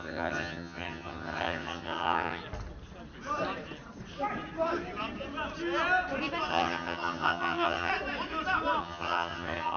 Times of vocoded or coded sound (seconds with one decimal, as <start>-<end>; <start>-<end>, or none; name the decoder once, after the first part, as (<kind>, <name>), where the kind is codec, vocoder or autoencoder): 0.0-2.4 (vocoder, HiFi-GAN); 6.5-7.9; 8.8-9.8